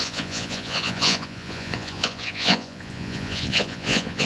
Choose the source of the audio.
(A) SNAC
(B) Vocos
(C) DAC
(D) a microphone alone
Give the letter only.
B